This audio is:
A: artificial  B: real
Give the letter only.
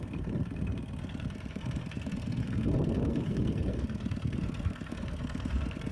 A